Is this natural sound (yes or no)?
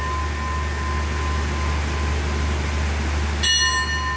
yes